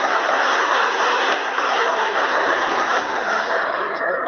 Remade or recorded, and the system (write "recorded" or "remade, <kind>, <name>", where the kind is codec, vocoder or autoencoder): remade, codec, SNAC